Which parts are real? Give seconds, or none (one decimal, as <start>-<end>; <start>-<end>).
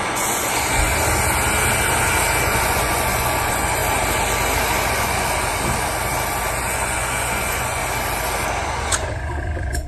0.9-2.4; 3.8-4.9; 5.5-6.6; 7.8-8.6